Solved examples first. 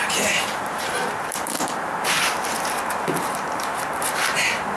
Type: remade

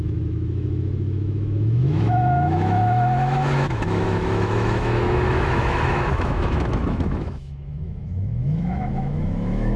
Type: remade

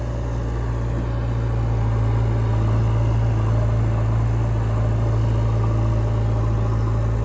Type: recorded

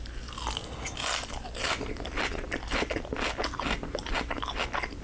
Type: recorded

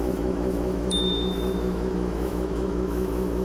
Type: remade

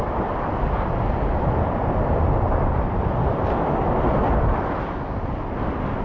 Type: recorded